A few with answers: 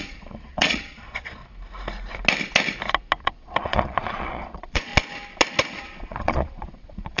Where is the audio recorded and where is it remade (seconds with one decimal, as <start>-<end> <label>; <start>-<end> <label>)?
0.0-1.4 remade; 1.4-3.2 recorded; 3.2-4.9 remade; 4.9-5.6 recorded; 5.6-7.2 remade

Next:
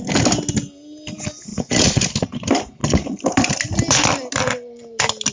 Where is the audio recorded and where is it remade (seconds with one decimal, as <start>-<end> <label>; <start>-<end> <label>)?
0.0-1.5 recorded; 1.5-2.0 remade; 2.0-5.3 recorded

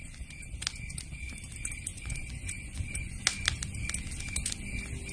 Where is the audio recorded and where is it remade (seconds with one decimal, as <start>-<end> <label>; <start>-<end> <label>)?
0.0-1.9 recorded; 1.9-3.2 remade; 3.2-5.1 recorded

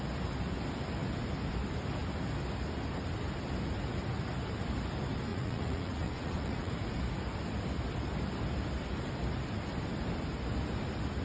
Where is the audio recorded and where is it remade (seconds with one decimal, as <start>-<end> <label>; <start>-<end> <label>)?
0.0-5.3 recorded; 5.3-6.7 remade; 6.7-11.2 recorded

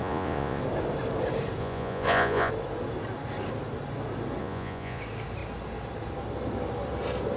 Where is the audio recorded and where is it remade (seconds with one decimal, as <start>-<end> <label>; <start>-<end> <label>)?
0.0-0.6 remade; 0.6-1.6 recorded; 1.6-2.5 remade; 2.5-4.4 recorded; 4.4-5.0 remade; 5.0-7.4 recorded

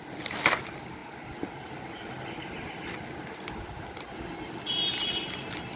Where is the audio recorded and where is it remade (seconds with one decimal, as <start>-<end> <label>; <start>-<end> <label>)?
0.0-5.8 recorded

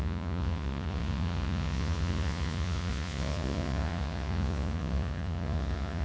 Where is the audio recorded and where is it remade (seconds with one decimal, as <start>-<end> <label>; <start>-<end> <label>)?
0.0-6.0 remade